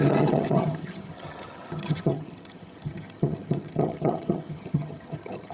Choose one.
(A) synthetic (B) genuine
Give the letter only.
A